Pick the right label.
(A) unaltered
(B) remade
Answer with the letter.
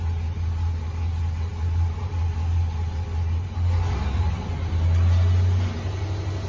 A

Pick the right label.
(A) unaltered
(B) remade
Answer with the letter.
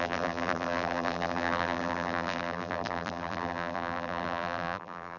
B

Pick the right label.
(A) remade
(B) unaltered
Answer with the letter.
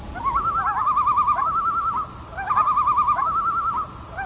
B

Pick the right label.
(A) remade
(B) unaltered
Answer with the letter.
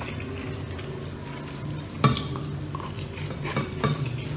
B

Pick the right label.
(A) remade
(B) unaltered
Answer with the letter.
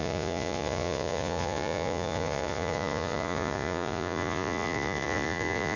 A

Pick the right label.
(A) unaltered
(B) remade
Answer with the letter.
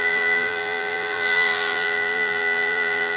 B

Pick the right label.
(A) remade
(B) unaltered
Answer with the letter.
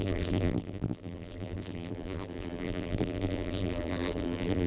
A